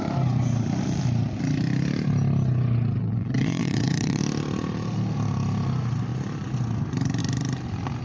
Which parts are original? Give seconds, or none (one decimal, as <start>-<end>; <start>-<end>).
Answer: 0.0-3.0; 4.2-8.0